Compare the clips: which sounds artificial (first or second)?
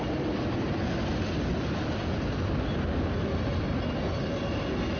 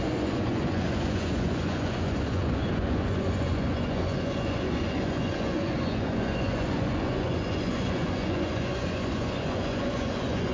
second